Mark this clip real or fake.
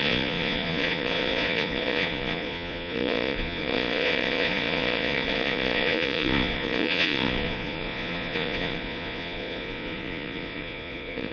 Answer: fake